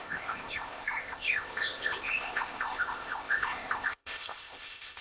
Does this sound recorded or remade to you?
remade